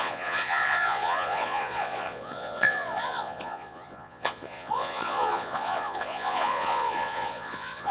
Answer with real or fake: fake